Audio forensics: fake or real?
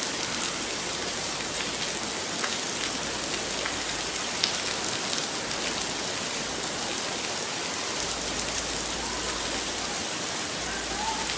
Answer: real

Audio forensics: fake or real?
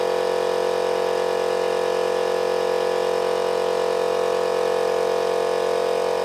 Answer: real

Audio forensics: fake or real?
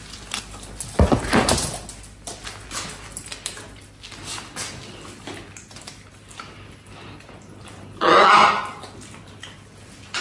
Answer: real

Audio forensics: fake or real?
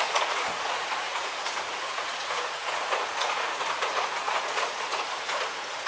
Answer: fake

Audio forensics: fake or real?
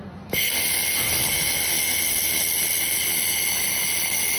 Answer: real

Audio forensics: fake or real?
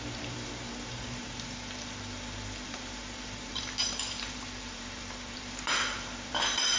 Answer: fake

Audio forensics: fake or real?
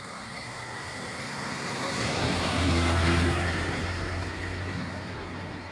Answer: fake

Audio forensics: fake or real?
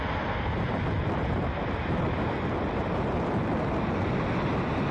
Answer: real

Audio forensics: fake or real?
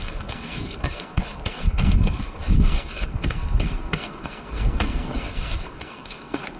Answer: fake